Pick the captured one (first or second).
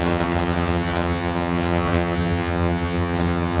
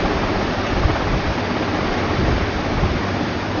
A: second